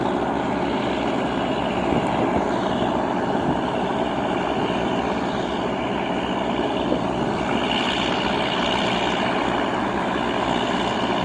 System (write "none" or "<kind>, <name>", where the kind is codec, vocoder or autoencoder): none